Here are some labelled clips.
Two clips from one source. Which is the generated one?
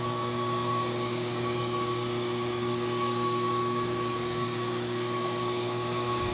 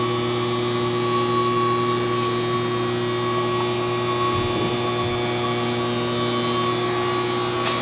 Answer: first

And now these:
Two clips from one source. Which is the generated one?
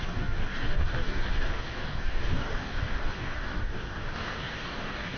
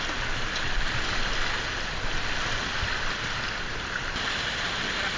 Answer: first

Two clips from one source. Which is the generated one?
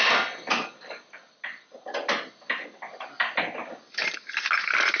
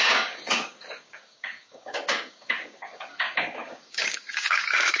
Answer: second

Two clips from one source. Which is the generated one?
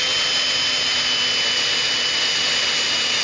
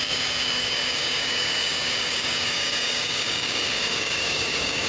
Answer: second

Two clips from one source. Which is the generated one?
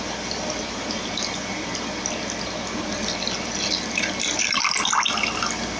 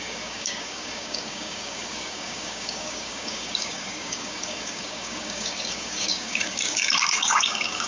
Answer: second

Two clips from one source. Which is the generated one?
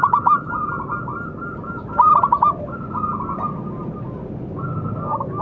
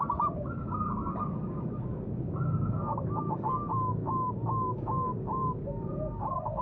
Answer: second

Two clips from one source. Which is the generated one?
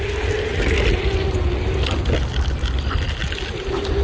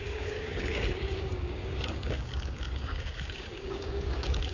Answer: second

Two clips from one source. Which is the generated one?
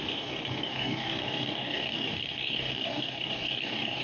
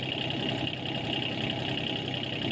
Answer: first